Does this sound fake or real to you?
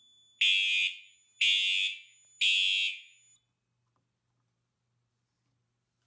real